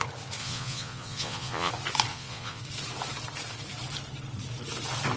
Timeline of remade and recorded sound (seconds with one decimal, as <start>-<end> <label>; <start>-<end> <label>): 0.0-0.4 recorded; 0.4-1.7 remade; 1.7-2.1 recorded; 2.1-2.6 remade; 2.6-5.2 recorded